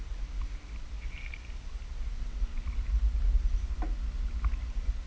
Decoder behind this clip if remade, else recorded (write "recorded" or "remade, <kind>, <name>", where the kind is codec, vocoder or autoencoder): recorded